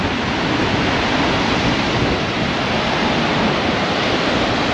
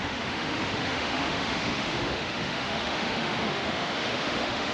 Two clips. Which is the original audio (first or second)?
first